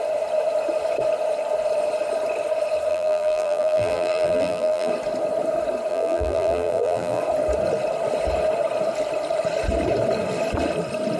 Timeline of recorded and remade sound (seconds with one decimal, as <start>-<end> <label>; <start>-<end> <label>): 0.0-2.9 recorded; 2.9-4.9 remade; 4.9-5.9 recorded; 5.9-7.2 remade; 7.2-11.2 recorded